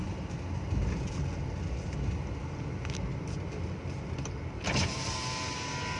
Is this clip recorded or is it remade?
recorded